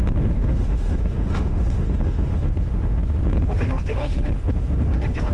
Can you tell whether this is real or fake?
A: fake